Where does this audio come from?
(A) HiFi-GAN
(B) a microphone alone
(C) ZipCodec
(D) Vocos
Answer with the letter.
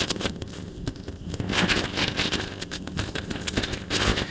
C